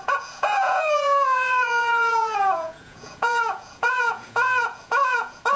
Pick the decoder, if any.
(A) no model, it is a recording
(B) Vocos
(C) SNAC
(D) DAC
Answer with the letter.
B